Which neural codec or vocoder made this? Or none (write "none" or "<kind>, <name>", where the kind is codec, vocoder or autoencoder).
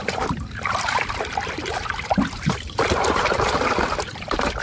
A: none